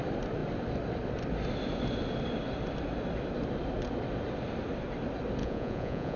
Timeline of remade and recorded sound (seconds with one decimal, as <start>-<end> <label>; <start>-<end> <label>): 0.0-5.4 recorded; 5.4-6.2 remade

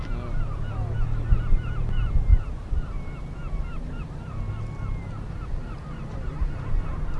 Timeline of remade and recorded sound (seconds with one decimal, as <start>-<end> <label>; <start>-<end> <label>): 0.0-7.2 recorded

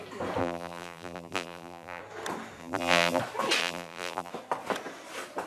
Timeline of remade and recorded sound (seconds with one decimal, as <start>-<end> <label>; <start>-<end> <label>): 0.0-0.4 recorded; 0.4-2.0 remade; 2.0-2.6 recorded; 2.6-3.2 remade; 3.2-3.6 recorded; 3.6-4.3 remade; 4.3-5.5 recorded

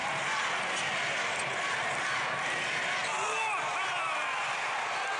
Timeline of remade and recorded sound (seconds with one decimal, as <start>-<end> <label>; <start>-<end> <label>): 0.0-5.2 recorded

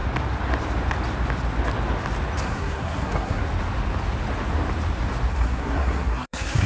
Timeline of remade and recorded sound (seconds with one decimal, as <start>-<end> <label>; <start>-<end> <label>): 0.0-2.4 recorded; 2.4-3.4 remade; 3.4-5.3 recorded; 5.3-6.7 remade

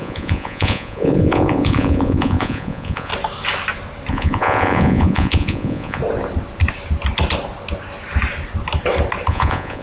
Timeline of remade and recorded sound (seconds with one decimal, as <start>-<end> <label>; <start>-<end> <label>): 0.0-3.1 remade; 3.1-4.1 recorded; 4.1-6.0 remade; 6.0-9.3 recorded; 9.3-9.8 remade

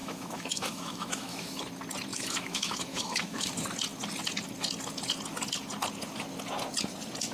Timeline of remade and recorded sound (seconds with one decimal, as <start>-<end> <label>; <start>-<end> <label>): 0.0-1.6 remade; 1.6-2.1 recorded; 2.1-3.5 remade; 3.5-7.3 recorded